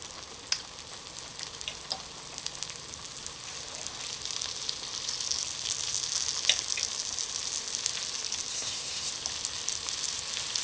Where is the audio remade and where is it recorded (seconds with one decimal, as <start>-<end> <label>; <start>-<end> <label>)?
0.0-8.5 recorded; 8.5-9.1 remade; 9.1-10.6 recorded